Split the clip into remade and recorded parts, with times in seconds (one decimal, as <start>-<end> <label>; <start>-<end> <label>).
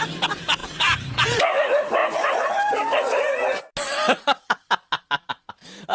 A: 0.0-2.0 remade; 2.0-5.3 recorded; 5.3-5.9 remade